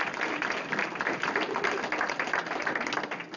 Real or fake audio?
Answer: real